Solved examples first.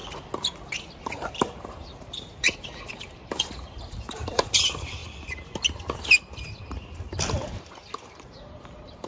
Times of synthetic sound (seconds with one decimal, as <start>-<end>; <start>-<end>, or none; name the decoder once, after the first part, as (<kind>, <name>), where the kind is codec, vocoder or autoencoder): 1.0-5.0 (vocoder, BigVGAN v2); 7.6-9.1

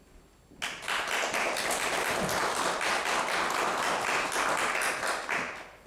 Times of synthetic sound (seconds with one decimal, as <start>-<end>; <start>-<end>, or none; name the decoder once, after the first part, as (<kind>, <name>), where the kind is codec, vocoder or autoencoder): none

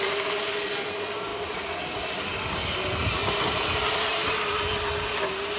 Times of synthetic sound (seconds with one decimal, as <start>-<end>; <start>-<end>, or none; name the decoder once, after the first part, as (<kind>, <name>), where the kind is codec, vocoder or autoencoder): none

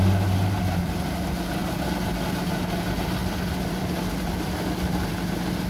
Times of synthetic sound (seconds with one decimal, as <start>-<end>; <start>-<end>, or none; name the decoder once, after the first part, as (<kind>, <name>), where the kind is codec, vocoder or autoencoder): 3.2-5.1 (vocoder, BigVGAN v2)